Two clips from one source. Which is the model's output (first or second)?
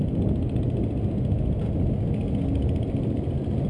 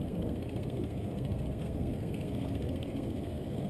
second